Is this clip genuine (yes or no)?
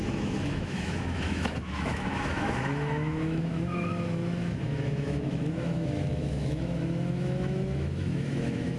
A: no